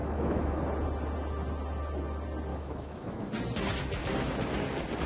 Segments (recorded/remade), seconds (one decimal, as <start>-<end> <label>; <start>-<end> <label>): 0.0-0.6 remade; 0.6-2.5 recorded; 2.5-3.3 remade; 3.3-5.1 recorded